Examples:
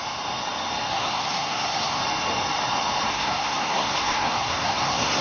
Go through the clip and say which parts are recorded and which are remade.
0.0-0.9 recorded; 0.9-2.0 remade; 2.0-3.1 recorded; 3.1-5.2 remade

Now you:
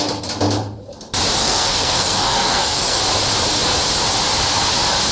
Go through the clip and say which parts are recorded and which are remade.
0.0-1.4 recorded; 1.4-3.0 remade; 3.0-5.1 recorded

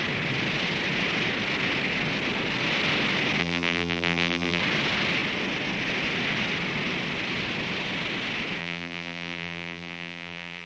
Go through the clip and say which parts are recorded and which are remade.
0.0-3.4 recorded; 3.4-4.6 remade; 4.6-8.6 recorded; 8.6-10.7 remade

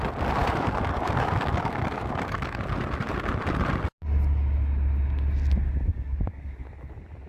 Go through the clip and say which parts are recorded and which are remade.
0.0-0.4 recorded; 0.4-2.6 remade; 2.6-5.9 recorded; 5.9-6.6 remade; 6.6-7.3 recorded